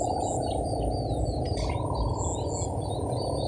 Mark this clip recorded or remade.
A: recorded